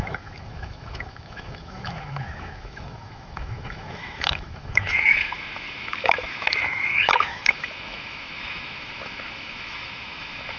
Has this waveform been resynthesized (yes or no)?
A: yes